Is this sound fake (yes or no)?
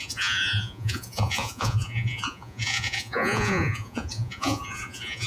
yes